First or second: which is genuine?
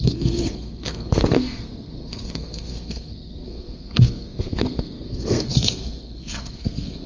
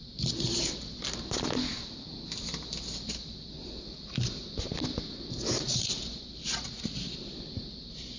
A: second